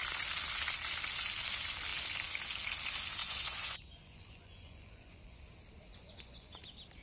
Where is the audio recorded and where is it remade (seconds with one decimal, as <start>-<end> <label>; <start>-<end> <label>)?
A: 0.0-3.2 recorded; 3.2-5.4 remade; 5.4-5.9 recorded; 5.9-6.6 remade; 6.6-7.0 recorded